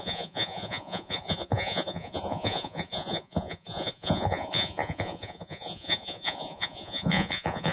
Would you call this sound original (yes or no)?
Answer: no